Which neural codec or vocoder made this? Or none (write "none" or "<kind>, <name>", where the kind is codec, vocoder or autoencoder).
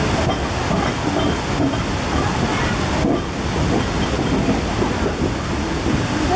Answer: none